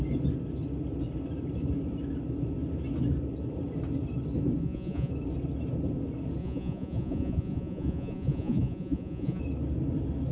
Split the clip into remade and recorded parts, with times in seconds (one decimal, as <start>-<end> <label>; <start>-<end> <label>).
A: 0.0-4.6 recorded; 4.6-5.1 remade; 5.1-6.4 recorded; 6.4-9.4 remade; 9.4-10.3 recorded